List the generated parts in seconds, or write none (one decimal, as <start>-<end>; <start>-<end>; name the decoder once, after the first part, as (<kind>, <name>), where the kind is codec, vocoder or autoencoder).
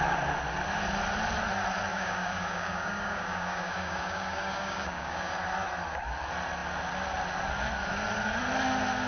1.9-5.3 (codec, DAC)